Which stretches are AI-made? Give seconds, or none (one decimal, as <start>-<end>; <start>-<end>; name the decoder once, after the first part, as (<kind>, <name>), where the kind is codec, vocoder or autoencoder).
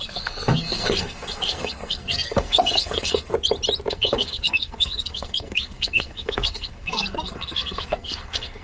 0.0-3.3 (codec, SNAC); 3.9-8.6